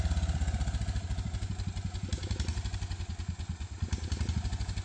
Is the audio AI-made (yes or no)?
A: no